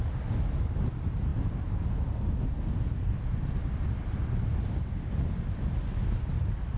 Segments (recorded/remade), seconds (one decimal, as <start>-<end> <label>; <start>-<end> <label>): 0.0-6.8 recorded